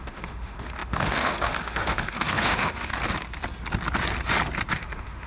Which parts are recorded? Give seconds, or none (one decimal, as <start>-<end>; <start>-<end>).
2.9-4.7

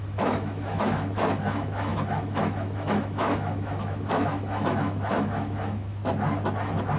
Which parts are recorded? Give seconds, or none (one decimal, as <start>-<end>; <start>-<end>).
6.0-7.0

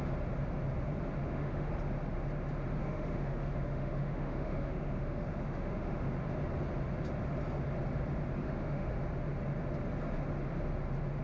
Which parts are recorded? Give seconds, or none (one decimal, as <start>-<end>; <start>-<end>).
0.0-1.2; 1.7-2.8; 6.1-8.4; 8.9-11.2

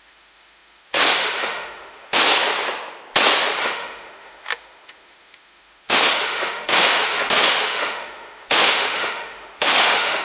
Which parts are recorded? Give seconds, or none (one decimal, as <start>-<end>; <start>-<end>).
2.3-3.6

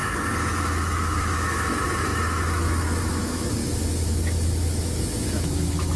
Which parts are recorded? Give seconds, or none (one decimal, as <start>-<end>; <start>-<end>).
0.0-0.6

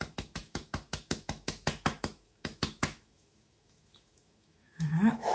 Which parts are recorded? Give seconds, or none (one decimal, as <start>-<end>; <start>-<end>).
none

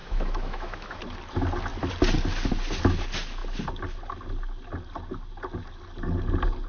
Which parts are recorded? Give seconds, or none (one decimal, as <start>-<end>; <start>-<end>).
1.0-6.7

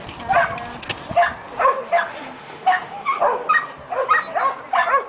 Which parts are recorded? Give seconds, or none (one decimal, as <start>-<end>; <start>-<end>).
0.0-2.1; 3.2-5.1